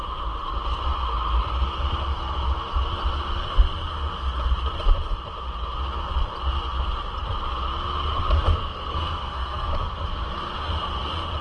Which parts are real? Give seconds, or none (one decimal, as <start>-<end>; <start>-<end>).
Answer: 0.0-8.5; 9.7-11.4